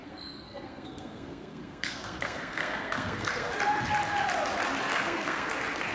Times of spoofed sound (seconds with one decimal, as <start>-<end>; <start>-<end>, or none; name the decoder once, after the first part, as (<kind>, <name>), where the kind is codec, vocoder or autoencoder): 0.0-3.5 (codec, SNAC); 4.9-5.5